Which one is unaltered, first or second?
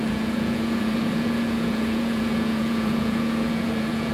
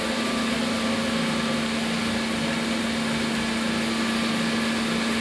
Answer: second